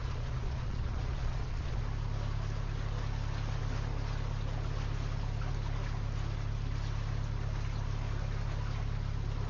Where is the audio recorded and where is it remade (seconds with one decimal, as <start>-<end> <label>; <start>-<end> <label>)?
0.0-1.8 remade; 1.8-9.5 recorded